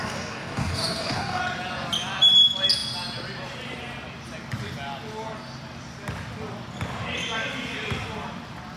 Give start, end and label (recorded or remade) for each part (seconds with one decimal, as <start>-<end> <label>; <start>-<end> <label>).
0.0-1.4 remade; 1.4-8.8 recorded